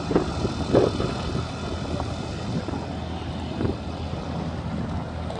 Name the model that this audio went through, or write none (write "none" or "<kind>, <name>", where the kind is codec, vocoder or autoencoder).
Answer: vocoder, BigVGAN v2